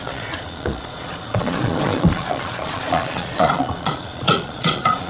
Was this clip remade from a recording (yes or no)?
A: yes